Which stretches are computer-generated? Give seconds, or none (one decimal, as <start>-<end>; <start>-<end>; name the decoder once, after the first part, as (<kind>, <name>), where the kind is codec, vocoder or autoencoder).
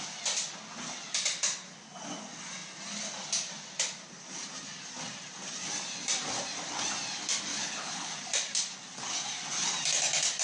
7.5-8.1 (codec, HILCodec)